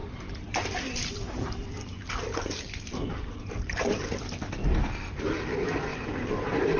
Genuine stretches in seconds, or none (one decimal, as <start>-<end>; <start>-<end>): 4.0-4.6; 5.2-5.9